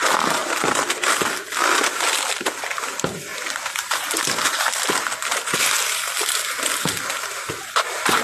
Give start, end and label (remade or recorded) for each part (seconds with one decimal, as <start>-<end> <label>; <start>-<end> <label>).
0.0-8.2 recorded